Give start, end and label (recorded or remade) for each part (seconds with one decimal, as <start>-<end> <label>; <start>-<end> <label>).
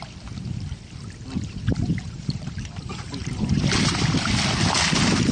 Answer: 0.0-1.7 recorded; 1.7-3.6 remade; 3.6-5.3 recorded